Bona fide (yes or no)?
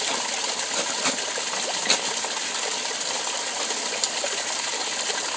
yes